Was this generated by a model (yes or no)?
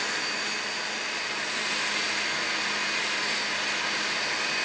no